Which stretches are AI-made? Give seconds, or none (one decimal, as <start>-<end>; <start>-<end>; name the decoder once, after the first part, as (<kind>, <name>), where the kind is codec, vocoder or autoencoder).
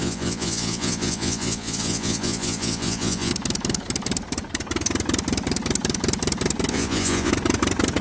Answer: 0.0-3.3 (vocoder, Vocos); 6.7-7.3